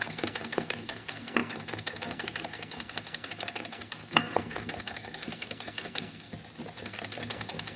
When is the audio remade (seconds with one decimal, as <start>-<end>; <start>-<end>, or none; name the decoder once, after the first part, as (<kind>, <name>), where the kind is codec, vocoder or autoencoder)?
0.0-6.3 (codec, SNAC); 6.8-7.8